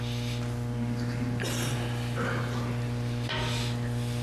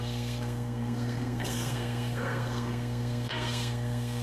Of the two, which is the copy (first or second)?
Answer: second